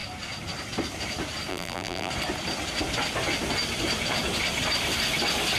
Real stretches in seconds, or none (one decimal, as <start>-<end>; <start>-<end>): 0.0-1.5; 2.1-5.6